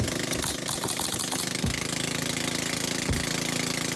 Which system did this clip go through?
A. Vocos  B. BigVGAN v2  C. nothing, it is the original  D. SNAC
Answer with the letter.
C